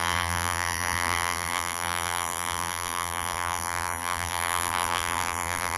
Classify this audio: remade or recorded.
remade